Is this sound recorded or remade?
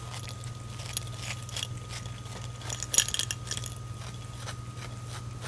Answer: recorded